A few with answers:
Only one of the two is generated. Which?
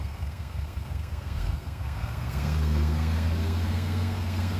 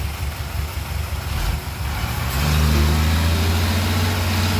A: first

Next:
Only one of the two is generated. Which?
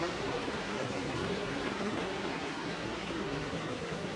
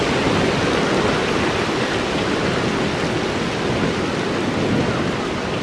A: first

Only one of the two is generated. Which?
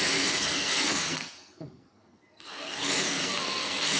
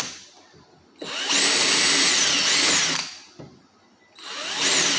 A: first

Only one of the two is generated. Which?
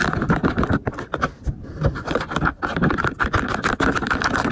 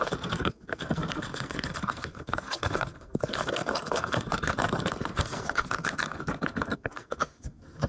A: second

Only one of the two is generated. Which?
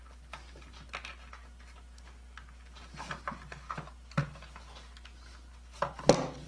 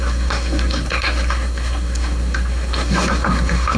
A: second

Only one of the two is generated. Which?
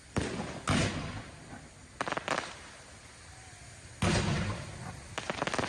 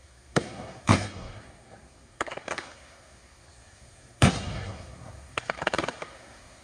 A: second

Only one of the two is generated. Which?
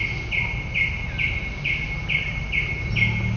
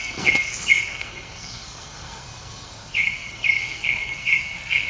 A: second